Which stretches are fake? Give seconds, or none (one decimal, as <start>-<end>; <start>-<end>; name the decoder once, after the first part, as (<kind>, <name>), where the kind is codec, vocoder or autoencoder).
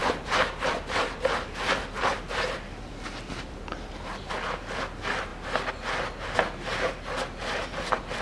0.0-4.0 (vocoder, BigVGAN v2)